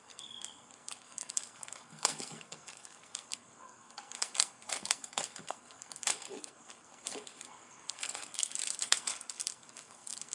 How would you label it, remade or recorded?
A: remade